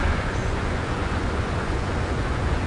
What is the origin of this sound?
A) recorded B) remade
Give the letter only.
B